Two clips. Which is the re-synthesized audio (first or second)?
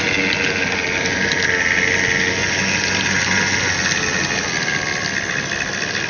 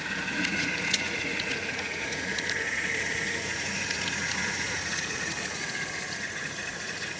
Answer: second